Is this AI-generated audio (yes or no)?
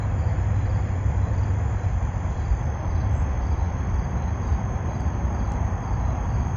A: yes